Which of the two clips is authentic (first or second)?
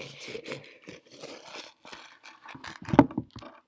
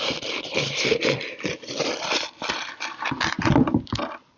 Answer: first